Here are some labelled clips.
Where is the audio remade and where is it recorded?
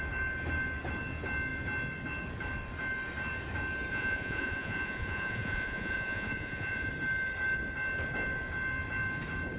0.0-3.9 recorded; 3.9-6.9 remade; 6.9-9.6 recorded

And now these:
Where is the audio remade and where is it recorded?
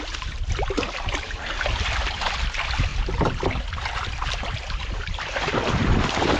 0.0-2.9 remade; 2.9-3.4 recorded; 3.4-6.4 remade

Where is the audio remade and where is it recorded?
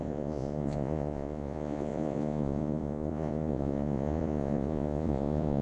0.0-5.6 remade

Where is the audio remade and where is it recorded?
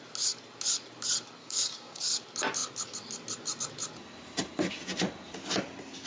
0.0-1.4 recorded; 1.4-2.0 remade; 2.0-6.1 recorded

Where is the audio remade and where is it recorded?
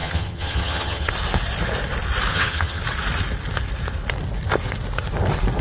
0.0-1.1 remade; 1.1-2.3 recorded; 2.3-2.8 remade; 2.8-5.6 recorded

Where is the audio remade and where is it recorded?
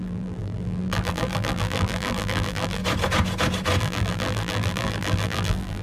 0.0-2.8 remade; 2.8-3.8 recorded; 3.8-5.8 remade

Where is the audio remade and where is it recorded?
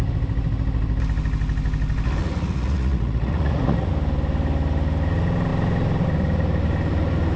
0.0-2.2 recorded; 2.2-3.9 remade; 3.9-7.4 recorded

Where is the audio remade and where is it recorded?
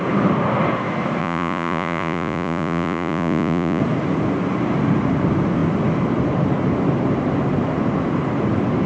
0.0-1.2 recorded; 1.2-3.8 remade; 3.8-8.9 recorded